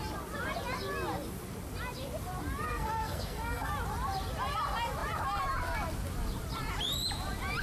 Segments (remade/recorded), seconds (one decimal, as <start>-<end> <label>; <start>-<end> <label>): 0.0-2.7 recorded; 2.7-3.7 remade; 3.7-7.6 recorded